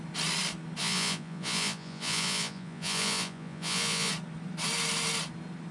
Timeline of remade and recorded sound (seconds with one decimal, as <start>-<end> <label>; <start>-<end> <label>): 0.0-0.8 recorded; 0.8-4.1 remade; 4.1-5.7 recorded